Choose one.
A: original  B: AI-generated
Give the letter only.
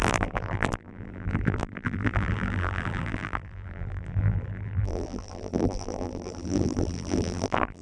B